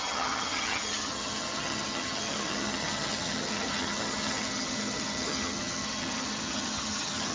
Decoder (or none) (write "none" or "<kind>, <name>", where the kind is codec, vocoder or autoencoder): vocoder, HiFi-GAN